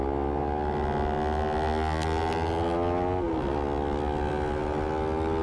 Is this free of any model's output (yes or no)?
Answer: yes